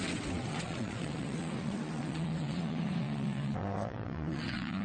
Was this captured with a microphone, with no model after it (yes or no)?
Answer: no